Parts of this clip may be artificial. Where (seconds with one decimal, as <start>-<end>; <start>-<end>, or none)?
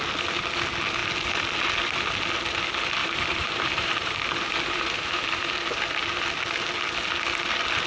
3.0-5.5